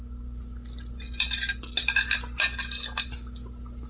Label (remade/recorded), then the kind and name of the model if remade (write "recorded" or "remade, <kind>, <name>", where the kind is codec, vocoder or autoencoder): recorded